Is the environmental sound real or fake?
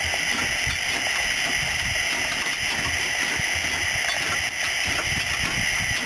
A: real